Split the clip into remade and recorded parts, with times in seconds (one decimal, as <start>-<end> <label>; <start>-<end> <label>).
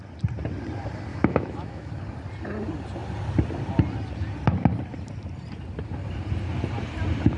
0.0-1.1 recorded; 1.1-1.9 remade; 1.9-7.4 recorded